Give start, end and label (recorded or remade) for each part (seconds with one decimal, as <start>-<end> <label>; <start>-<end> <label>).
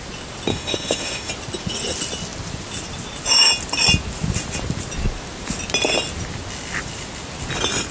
0.0-0.5 recorded; 0.5-1.3 remade; 1.3-7.9 recorded